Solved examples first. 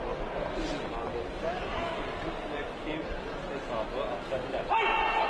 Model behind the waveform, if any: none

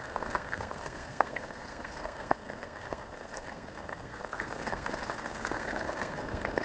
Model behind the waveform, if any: codec, SNAC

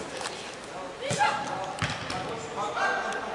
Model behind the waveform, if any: none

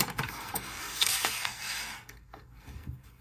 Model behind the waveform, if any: codec, SNAC